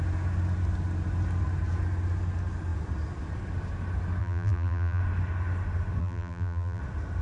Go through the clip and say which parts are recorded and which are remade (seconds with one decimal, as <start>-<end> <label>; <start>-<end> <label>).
0.0-4.2 recorded; 4.2-5.0 remade; 5.0-6.0 recorded; 6.0-6.8 remade; 6.8-7.2 recorded

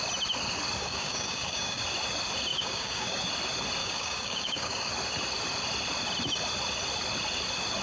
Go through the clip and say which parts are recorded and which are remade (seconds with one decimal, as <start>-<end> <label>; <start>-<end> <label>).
0.0-0.8 recorded; 0.8-1.8 remade; 1.8-2.5 recorded; 2.5-3.2 remade; 3.2-3.8 recorded; 3.8-4.9 remade; 4.9-7.8 recorded

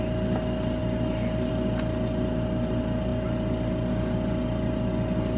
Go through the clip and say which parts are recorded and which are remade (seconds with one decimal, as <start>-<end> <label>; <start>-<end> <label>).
0.0-5.4 recorded